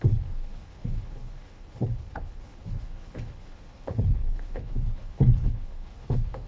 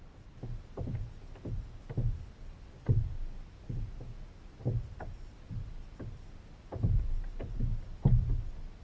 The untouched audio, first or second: second